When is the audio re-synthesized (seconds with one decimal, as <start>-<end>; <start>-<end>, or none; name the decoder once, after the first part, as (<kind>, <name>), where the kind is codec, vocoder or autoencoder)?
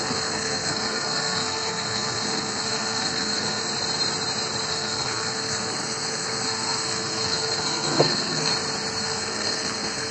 0.0-3.6 (codec, SNAC); 4.7-8.5; 9.0-10.1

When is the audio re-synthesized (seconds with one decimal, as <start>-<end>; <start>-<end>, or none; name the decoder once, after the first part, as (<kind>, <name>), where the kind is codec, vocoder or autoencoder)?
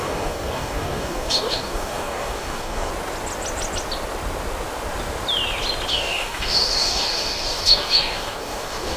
0.0-2.9 (codec, DAC); 5.9-9.0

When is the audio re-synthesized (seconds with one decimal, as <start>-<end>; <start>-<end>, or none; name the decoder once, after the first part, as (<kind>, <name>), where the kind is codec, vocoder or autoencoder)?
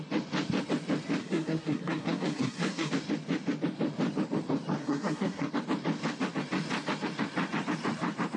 1.2-2.9 (codec, SNAC); 4.8-5.5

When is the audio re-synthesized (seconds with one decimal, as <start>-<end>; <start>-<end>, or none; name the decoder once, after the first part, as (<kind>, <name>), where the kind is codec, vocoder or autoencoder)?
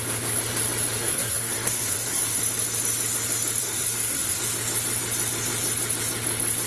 1.0-2.4 (codec, SNAC); 3.6-4.4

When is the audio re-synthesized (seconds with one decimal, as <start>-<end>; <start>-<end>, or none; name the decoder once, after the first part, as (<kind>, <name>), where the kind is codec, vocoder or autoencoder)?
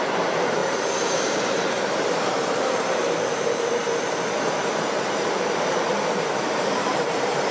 0.0-3.8 (vocoder, BigVGAN v2); 4.7-7.5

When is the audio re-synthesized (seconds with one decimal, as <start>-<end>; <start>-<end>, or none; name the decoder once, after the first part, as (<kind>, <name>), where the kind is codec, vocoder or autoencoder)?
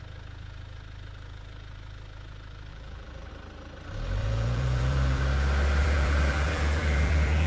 2.7-3.3 (vocoder, BigVGAN v2); 4.2-5.2; 5.8-7.5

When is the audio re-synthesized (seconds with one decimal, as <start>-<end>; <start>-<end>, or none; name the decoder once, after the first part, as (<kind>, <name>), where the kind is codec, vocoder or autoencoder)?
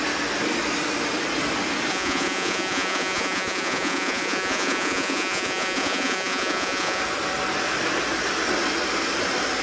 1.9-7.0 (vocoder, Vocos)